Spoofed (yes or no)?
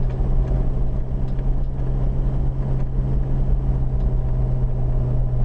no